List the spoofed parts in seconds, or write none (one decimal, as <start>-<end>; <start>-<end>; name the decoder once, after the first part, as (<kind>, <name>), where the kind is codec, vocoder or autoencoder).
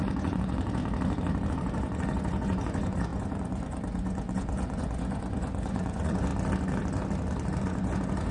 0.0-0.8 (vocoder, Vocos); 1.5-6.3; 7.6-8.3